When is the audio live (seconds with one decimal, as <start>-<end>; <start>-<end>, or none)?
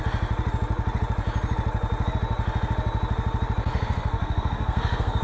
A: 0.0-3.7